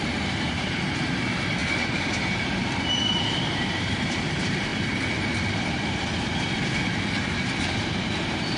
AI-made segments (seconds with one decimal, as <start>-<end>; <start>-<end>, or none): 0.0-4.7; 7.6-8.6